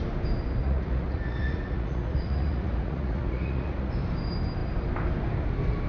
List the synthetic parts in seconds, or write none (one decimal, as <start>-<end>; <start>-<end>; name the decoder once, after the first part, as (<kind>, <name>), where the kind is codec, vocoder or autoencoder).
0.6-3.9 (vocoder, Vocos)